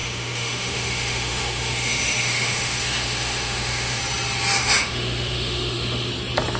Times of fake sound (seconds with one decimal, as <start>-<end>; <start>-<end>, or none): 0.0-4.0; 4.6-6.1